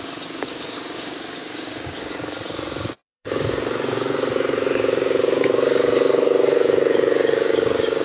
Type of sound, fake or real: fake